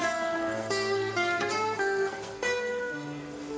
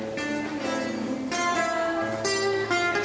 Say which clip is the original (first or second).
second